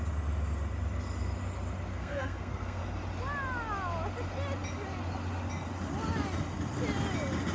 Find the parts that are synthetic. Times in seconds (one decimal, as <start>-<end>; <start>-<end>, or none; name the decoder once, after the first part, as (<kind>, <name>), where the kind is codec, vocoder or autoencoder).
1.9-2.8 (codec, SNAC)